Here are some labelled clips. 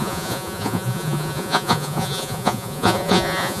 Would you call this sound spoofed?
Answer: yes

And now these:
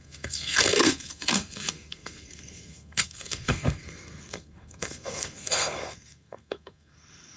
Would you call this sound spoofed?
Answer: yes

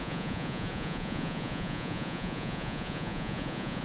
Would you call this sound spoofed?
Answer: yes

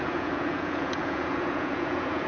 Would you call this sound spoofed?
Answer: yes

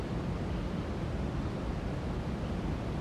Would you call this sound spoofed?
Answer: no